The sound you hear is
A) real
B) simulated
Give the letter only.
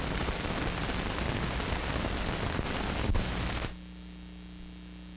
A